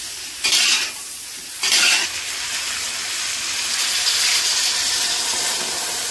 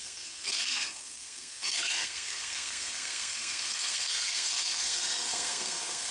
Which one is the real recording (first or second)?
first